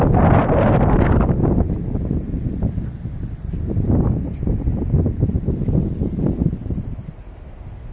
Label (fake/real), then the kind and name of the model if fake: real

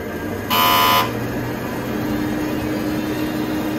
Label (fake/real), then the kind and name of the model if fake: real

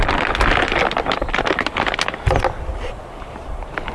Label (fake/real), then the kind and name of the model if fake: real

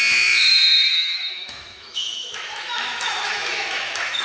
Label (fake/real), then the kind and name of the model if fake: fake, autoencoder, DAC-VAE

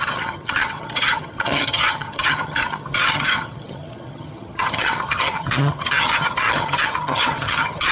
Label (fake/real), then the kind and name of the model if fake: fake, vocoder, HiFi-GAN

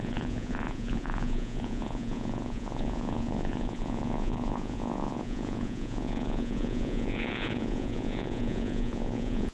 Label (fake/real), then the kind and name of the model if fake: fake, vocoder, Vocos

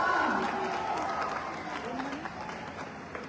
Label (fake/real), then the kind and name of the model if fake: real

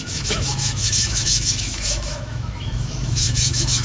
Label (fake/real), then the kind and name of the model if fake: fake, autoencoder, DAC-VAE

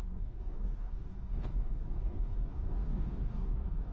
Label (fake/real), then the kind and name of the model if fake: fake, codec, DAC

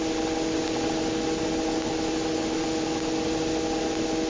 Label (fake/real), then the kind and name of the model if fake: real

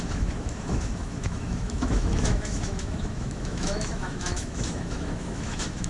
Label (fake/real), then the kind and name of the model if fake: fake, autoencoder, DAC-VAE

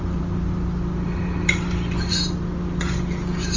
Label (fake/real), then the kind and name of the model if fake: real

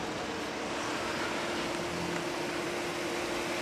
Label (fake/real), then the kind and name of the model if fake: real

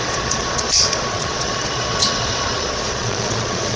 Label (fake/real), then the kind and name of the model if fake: fake, vocoder, Vocos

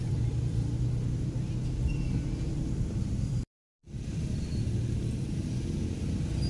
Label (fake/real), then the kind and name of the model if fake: fake, vocoder, BigVGAN v2